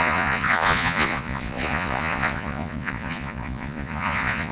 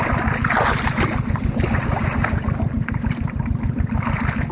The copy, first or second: first